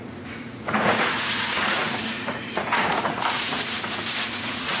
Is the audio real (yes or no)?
no